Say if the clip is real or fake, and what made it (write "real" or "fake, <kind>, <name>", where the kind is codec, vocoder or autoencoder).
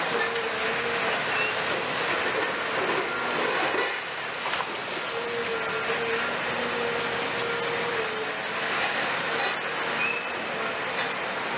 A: real